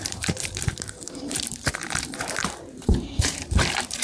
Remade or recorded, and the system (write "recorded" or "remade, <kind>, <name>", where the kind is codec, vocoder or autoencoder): remade, vocoder, BigVGAN v2